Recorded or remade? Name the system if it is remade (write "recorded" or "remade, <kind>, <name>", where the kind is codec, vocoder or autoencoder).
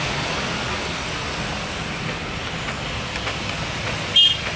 recorded